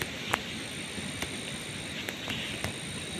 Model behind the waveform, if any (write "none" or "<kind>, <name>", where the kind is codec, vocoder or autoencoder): none